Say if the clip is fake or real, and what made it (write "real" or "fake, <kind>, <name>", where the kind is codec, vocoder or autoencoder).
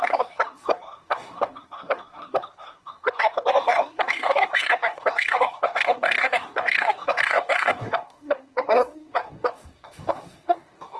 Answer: fake, codec, SNAC